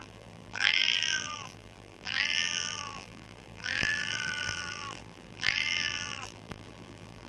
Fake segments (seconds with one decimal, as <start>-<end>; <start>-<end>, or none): 0.0-7.3